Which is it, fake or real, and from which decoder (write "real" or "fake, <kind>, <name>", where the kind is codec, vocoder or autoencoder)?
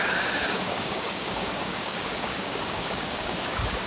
fake, codec, DAC